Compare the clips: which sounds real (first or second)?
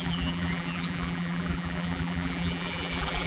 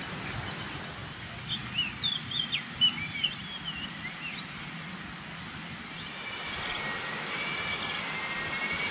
second